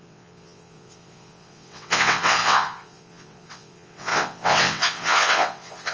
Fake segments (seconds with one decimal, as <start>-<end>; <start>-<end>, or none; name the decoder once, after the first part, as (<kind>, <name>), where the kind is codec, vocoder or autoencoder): 0.0-5.9 (vocoder, WaveNeXt)